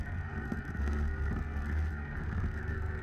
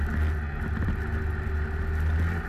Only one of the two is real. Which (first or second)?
second